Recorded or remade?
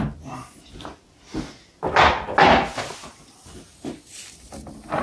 recorded